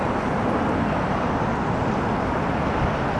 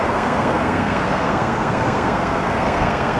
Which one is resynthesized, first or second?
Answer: second